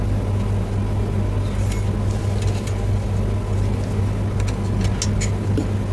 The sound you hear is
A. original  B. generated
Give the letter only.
A